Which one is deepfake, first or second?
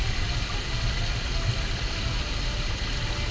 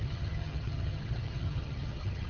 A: second